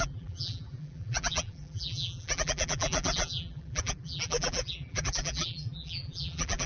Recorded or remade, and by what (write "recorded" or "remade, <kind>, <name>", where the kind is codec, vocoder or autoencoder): remade, vocoder, BigVGAN v2